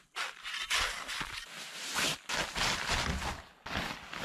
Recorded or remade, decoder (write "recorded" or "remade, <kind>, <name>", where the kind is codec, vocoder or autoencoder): recorded